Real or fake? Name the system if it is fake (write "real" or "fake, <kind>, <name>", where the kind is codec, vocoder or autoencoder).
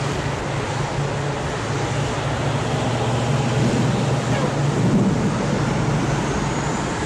real